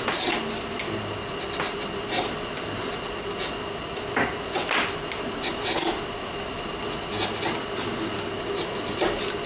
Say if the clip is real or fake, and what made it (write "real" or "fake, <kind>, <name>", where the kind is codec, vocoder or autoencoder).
real